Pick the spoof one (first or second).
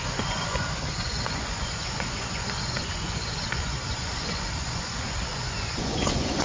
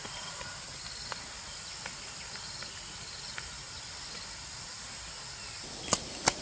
first